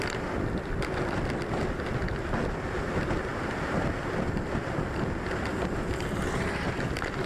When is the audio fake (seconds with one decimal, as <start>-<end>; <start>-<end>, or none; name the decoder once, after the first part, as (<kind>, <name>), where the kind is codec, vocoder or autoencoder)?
none